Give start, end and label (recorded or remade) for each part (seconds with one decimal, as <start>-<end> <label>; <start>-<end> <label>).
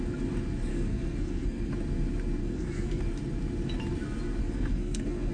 0.0-0.7 recorded; 0.7-1.7 remade; 1.7-2.4 recorded; 2.4-3.0 remade; 3.0-4.4 recorded; 4.4-5.3 remade